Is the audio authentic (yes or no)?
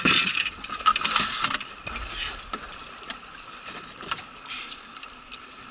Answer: no